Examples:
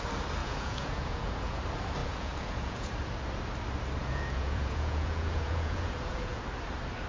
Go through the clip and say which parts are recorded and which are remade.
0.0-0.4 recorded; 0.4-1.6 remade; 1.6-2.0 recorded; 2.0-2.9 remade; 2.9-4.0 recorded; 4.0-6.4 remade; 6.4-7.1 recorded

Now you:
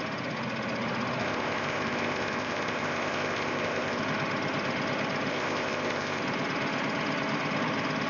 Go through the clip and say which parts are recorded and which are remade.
0.0-1.2 recorded; 1.2-4.0 remade; 4.0-5.3 recorded; 5.3-6.2 remade; 6.2-8.1 recorded

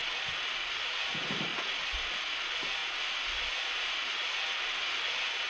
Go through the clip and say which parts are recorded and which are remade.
0.0-5.5 recorded